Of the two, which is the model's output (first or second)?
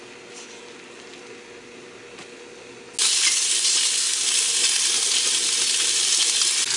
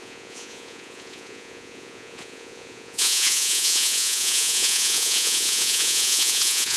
second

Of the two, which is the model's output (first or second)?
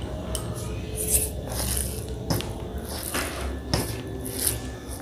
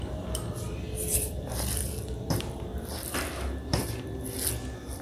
second